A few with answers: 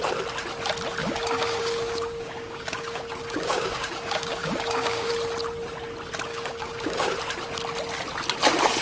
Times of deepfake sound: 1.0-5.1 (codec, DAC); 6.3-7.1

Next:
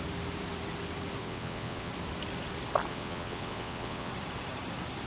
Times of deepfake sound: 1.2-1.9 (vocoder, WaveNeXt); 2.9-4.1

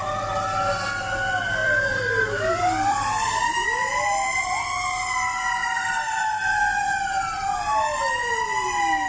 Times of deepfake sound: 1.6-4.4 (vocoder, BigVGAN v2); 5.6-6.2

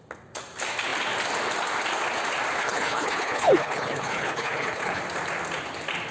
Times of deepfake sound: 2.6-5.0 (codec, HILCodec)

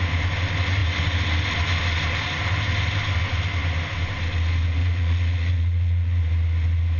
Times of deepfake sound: 4.8-6.2 (vocoder, Vocos)

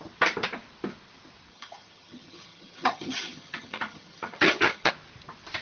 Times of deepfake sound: 1.5-4.9 (vocoder, HiFi-GAN)